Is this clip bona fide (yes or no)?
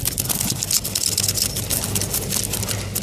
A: yes